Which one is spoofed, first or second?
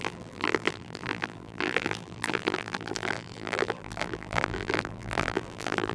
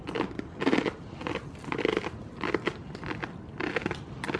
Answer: first